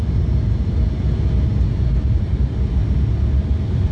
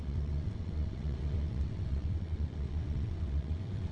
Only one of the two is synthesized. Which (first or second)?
second